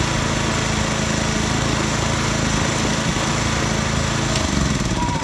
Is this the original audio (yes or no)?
yes